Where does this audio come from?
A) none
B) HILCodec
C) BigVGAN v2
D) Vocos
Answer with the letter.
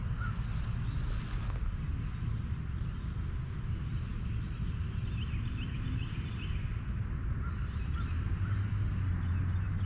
A